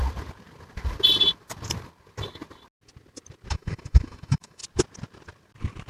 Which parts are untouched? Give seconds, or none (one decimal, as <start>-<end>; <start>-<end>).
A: 0.0-3.5; 4.6-5.9